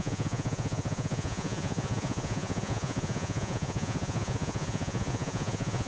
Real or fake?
fake